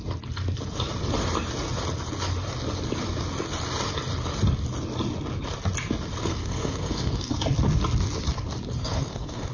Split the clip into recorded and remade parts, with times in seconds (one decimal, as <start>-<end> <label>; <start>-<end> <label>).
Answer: 0.0-6.2 recorded; 6.2-7.3 remade; 7.3-8.8 recorded; 8.8-9.5 remade